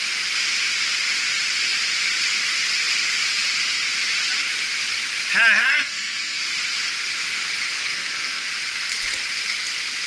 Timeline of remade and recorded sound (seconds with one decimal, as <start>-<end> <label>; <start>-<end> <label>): 0.0-5.6 recorded; 5.6-6.4 remade; 6.4-7.8 recorded; 7.8-8.5 remade; 8.5-10.1 recorded